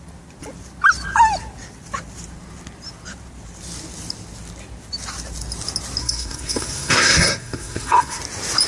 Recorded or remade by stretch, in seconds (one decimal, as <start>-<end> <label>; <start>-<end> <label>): 0.0-6.0 recorded; 6.0-8.2 remade; 8.2-8.7 recorded